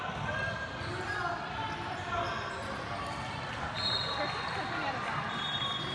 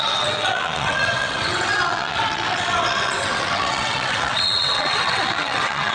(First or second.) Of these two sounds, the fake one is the second